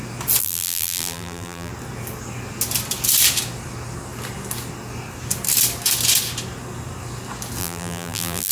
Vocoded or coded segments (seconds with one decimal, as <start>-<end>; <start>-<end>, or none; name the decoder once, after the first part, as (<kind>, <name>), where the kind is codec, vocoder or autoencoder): 0.4-1.7 (vocoder, BigVGAN v2); 7.6-8.5